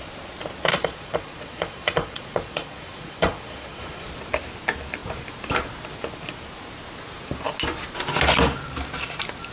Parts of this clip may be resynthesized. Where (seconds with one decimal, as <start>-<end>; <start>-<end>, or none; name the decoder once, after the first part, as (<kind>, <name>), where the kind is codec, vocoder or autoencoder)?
0.7-4.1 (vocoder, Vocos)

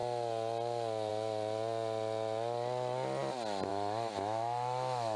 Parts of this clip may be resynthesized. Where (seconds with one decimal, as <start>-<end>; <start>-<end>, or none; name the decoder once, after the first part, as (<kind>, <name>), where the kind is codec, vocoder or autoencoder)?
3.7-5.2 (autoencoder, DAC-VAE)

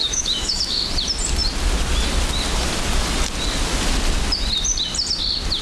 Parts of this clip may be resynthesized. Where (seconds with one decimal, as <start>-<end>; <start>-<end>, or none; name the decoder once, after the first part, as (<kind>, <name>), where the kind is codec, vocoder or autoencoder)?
0.0-0.8 (autoencoder, DAC-VAE)

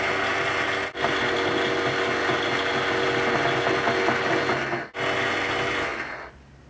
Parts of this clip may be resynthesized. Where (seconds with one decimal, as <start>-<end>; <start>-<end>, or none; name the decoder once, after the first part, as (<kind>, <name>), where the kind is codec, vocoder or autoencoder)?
none